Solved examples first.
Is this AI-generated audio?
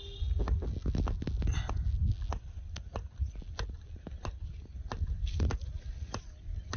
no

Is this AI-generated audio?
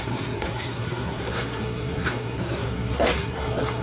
yes